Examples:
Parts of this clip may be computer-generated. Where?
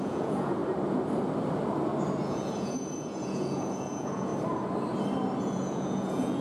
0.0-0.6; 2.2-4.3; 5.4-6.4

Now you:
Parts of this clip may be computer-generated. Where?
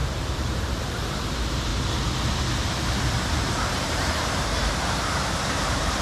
0.0-1.7; 3.3-6.0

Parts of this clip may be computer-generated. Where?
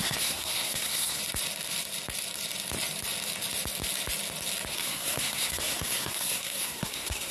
0.0-1.2; 4.7-7.3